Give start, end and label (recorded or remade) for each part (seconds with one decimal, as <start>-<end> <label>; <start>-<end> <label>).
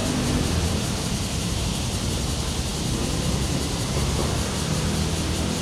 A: 0.0-1.6 remade; 1.6-4.2 recorded; 4.2-4.8 remade; 4.8-5.6 recorded